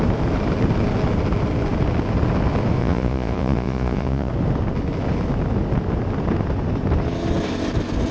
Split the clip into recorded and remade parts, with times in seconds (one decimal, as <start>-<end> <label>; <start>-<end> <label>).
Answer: 0.0-2.8 recorded; 2.8-4.3 remade; 4.3-8.1 recorded